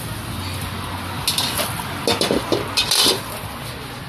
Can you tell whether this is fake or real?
real